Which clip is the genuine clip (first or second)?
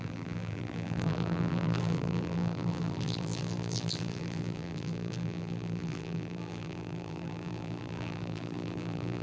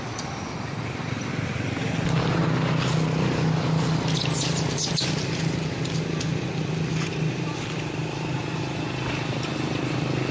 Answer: second